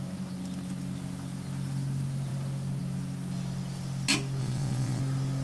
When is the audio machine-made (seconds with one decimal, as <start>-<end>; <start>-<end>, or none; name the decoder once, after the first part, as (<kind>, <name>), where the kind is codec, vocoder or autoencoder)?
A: 4.4-5.0 (vocoder, Vocos)